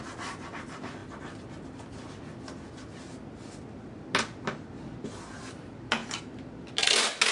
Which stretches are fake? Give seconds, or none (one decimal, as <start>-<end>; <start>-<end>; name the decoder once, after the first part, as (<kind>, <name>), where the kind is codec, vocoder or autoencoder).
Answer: none